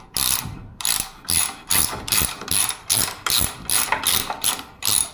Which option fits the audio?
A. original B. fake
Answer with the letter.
B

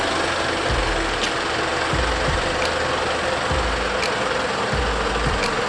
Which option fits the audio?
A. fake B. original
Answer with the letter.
B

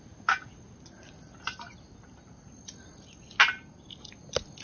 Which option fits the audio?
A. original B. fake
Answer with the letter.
A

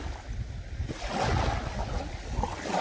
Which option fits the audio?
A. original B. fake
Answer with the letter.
A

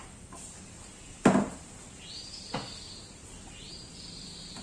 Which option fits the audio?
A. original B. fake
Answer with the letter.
A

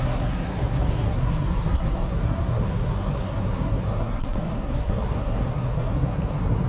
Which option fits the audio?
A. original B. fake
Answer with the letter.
B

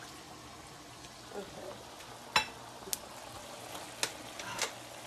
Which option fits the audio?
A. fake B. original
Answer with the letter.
B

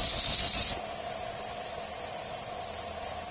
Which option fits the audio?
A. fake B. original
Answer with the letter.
B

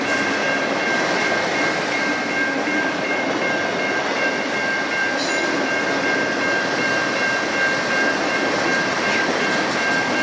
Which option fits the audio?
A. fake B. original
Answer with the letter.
A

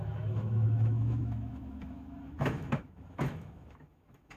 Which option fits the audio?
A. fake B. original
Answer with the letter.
A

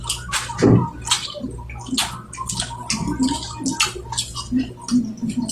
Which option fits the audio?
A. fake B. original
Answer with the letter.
B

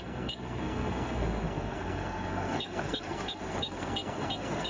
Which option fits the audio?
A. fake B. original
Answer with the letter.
A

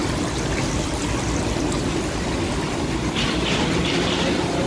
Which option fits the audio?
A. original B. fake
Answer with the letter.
A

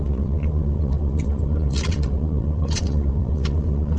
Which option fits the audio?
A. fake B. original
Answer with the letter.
A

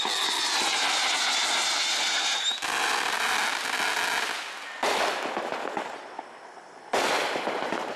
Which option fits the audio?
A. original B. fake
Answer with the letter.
A